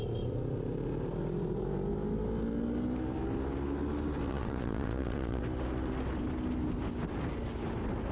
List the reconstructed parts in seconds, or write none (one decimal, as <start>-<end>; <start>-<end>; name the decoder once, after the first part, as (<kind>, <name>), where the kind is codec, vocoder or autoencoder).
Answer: 4.3-5.4 (vocoder, Vocos)

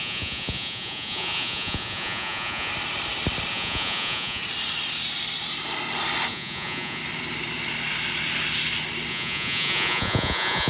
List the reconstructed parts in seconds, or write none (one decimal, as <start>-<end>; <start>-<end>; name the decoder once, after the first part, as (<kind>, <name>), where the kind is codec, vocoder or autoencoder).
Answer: 0.0-2.7 (vocoder, Vocos); 3.5-4.4; 6.3-7.0; 9.1-10.7